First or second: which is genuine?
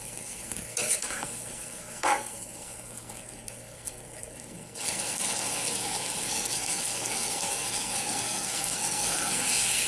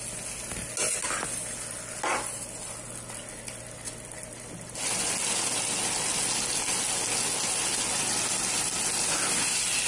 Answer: second